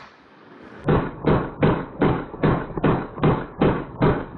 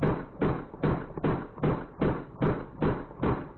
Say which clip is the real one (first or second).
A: second